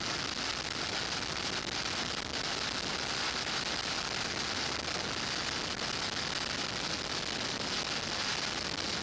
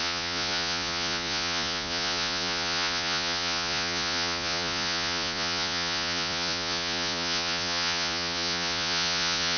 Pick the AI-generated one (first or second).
second